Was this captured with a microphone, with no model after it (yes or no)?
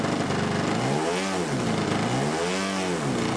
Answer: yes